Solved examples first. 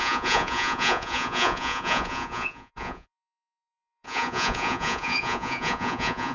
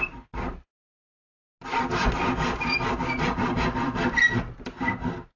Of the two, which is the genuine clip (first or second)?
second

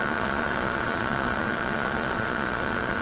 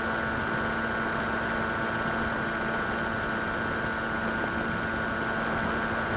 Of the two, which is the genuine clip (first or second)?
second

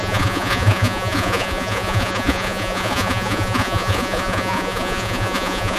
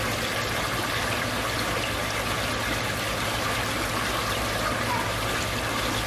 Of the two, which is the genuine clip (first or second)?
second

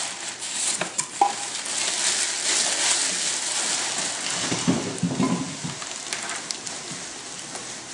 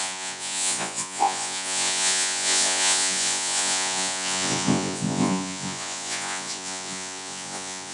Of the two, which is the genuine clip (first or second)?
first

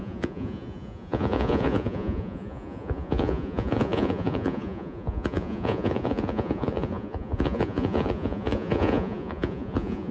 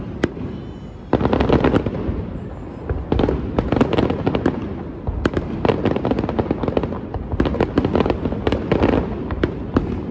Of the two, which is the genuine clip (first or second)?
second